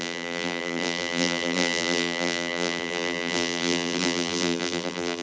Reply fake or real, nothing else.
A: fake